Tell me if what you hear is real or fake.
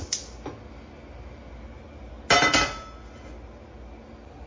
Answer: real